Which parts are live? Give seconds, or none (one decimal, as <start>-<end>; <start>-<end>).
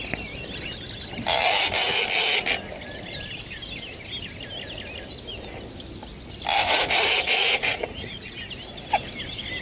0.0-6.6; 8.3-9.6